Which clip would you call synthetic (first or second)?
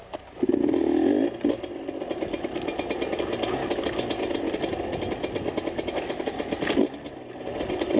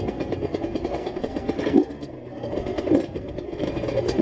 second